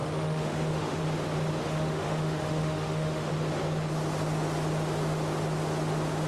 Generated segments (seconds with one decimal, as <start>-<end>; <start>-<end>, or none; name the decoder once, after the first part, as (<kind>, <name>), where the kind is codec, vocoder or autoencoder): 0.0-1.0 (autoencoder, DAC-VAE); 1.6-3.3